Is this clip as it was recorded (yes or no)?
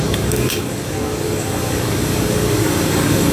no